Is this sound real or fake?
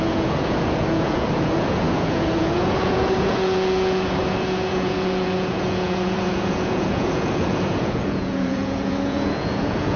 fake